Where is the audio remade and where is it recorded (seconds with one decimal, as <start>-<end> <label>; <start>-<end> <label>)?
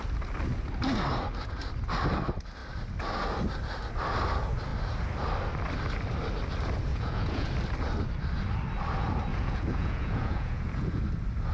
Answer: 0.0-6.9 recorded; 6.9-7.5 remade; 7.5-9.3 recorded; 9.3-11.0 remade; 11.0-11.5 recorded